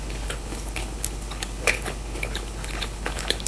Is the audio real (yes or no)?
no